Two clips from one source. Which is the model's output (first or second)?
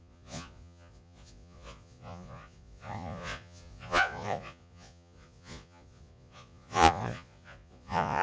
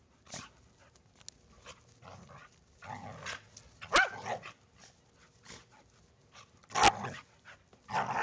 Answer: first